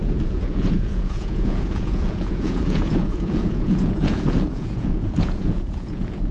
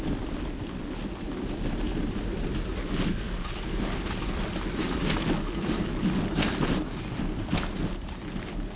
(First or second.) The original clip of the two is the second